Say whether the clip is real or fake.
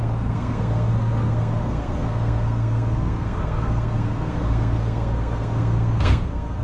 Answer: fake